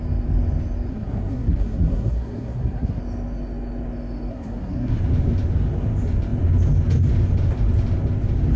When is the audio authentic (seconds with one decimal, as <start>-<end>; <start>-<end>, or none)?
0.0-0.9; 3.0-4.3; 5.0-8.6